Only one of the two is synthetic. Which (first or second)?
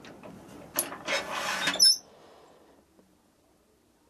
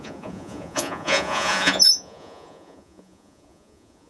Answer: second